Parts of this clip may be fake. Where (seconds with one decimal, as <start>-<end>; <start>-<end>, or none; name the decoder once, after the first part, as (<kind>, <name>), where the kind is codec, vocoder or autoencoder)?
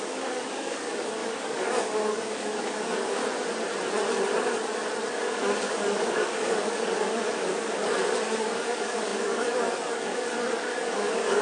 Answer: 0.0-3.2 (codec, DAC); 5.1-11.4